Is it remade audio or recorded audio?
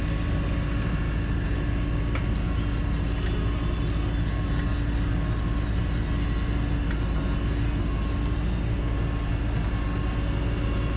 recorded